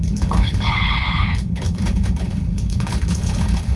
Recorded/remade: remade